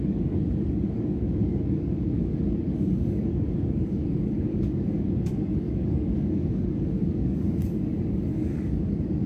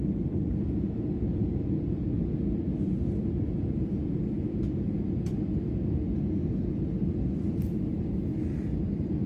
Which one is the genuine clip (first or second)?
second